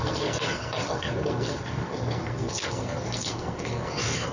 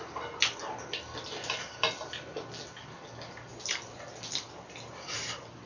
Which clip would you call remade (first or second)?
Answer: first